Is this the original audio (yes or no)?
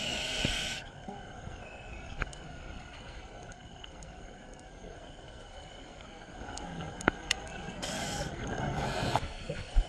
no